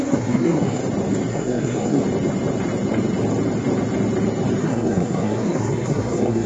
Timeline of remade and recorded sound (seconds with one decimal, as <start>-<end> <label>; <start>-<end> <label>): 0.0-0.8 remade; 0.8-1.3 recorded; 1.3-2.0 remade; 2.0-4.6 recorded; 4.6-6.5 remade